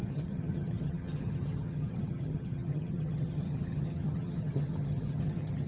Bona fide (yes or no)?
no